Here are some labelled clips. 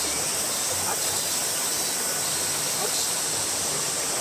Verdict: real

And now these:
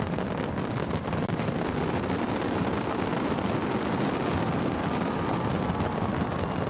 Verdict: real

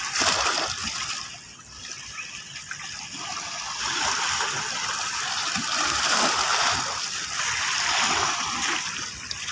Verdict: real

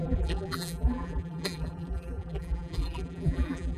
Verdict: fake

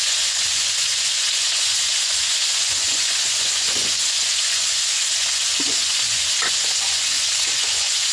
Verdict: fake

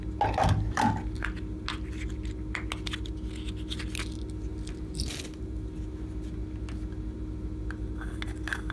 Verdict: real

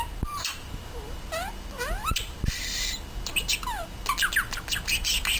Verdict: real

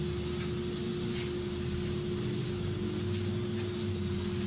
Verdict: real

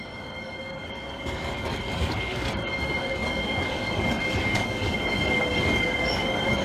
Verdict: fake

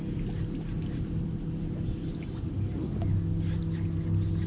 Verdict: real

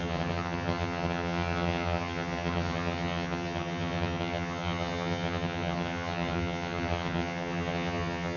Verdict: fake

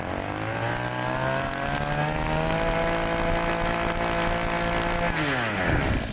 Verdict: real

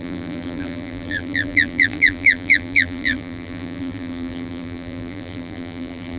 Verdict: fake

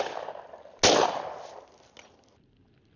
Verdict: real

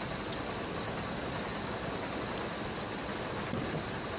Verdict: real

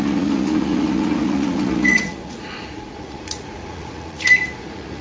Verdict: fake